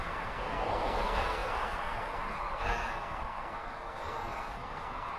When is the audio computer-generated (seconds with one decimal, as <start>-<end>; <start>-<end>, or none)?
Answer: 0.0-5.2